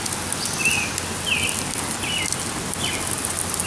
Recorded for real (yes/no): yes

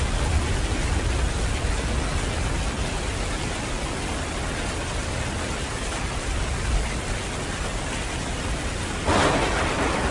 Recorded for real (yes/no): yes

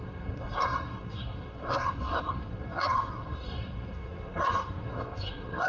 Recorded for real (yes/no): no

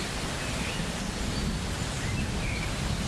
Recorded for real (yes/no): yes